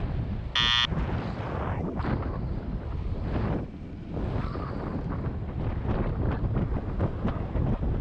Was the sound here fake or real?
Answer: real